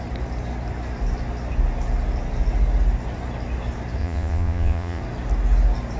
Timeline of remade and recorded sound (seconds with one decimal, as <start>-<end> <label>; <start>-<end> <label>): 0.0-4.0 recorded; 4.0-5.0 remade; 5.0-6.0 recorded